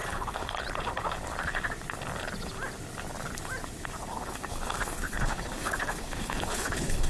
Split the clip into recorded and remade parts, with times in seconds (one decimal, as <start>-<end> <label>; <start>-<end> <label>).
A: 0.0-0.6 remade; 0.6-4.1 recorded; 4.1-7.1 remade